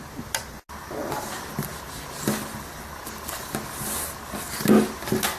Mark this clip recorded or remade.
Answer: recorded